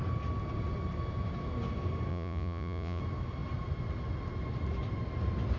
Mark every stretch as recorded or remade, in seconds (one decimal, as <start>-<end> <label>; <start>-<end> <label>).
0.0-2.1 recorded; 2.1-3.0 remade; 3.0-5.6 recorded